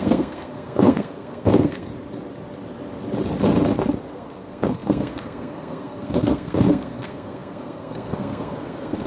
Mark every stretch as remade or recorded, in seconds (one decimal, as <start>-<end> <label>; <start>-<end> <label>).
0.0-1.9 remade; 1.9-4.0 recorded; 4.0-9.1 remade